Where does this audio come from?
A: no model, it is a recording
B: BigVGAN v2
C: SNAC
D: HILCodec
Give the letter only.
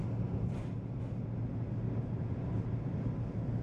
A